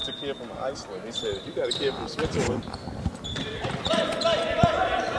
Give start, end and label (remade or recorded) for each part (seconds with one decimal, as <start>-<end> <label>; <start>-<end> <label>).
0.0-1.1 recorded; 1.1-5.2 remade